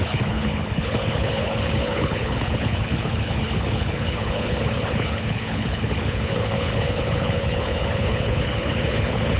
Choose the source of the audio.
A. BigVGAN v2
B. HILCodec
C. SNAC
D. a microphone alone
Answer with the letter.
B